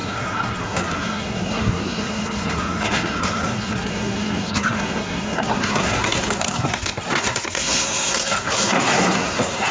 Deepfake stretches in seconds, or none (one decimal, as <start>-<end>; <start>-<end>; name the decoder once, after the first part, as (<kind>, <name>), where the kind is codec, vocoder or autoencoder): 0.0-9.7 (codec, SNAC)